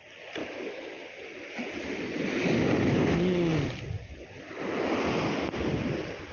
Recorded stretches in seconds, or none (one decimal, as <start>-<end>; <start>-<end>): 0.0-0.4; 2.8-3.5